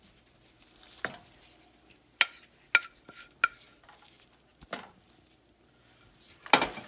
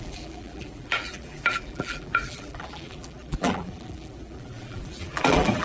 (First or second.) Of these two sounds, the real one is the first